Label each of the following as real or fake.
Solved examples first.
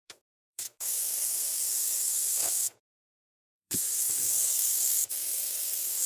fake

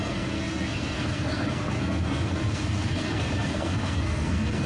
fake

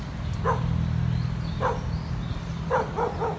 real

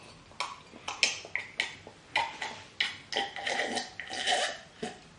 real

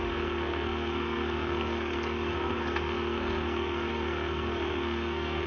fake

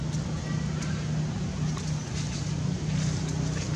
real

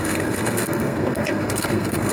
fake